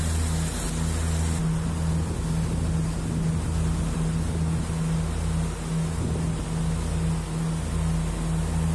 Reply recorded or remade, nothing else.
recorded